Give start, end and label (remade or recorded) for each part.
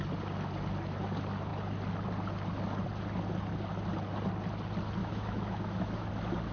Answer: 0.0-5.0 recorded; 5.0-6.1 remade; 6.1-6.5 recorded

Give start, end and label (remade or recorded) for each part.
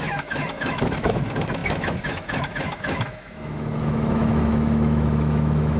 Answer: 0.0-5.8 remade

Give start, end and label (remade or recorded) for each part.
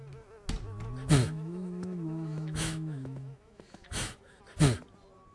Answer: 0.0-1.2 recorded; 1.2-4.4 remade; 4.4-5.3 recorded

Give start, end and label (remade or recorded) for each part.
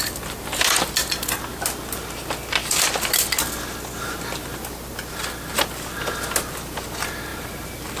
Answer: 0.0-8.0 recorded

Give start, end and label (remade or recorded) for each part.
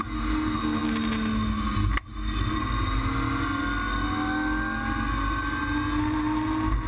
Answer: 0.0-6.9 recorded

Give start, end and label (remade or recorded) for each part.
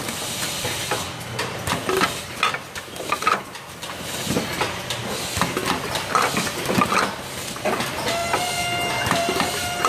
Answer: 0.0-9.9 recorded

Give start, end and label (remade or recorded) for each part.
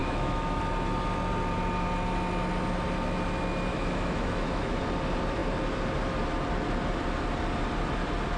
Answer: 0.0-0.6 remade; 0.6-3.7 recorded; 3.7-4.8 remade; 4.8-8.4 recorded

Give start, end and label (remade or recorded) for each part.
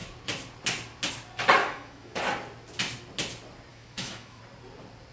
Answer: 0.0-1.6 recorded; 1.6-2.2 remade; 2.2-3.7 recorded; 3.7-4.4 remade; 4.4-5.1 recorded